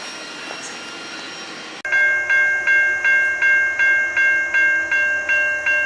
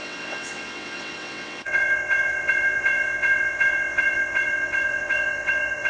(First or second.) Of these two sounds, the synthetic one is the second